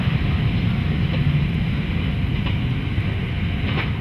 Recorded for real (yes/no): yes